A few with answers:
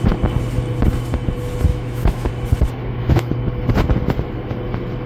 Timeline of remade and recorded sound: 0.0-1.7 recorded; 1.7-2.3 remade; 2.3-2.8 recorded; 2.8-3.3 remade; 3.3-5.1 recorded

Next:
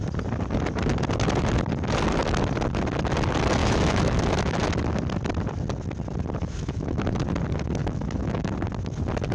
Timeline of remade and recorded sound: 0.0-3.6 recorded; 3.6-4.2 remade; 4.2-6.4 recorded; 6.4-7.2 remade; 7.2-7.8 recorded; 7.8-8.5 remade; 8.5-9.3 recorded

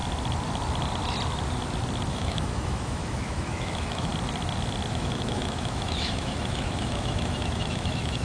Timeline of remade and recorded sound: 0.0-2.1 recorded; 2.1-4.1 remade; 4.1-4.9 recorded; 4.9-8.2 remade

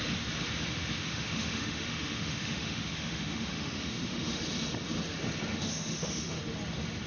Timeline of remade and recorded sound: 0.0-1.0 recorded; 1.0-4.4 remade; 4.4-5.5 recorded; 5.5-6.4 remade; 6.4-7.1 recorded

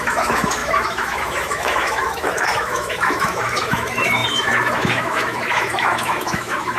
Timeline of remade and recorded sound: 0.0-6.8 remade

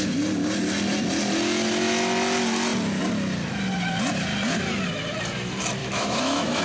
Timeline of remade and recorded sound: 0.0-5.8 recorded; 5.8-6.6 remade

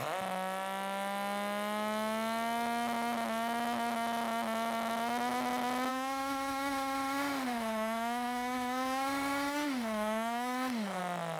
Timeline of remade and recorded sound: 0.0-5.9 recorded; 5.9-11.0 remade; 11.0-11.4 recorded

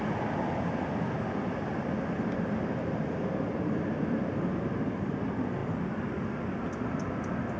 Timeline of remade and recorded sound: 0.0-7.6 recorded